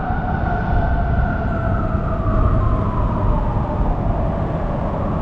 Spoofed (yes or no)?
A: no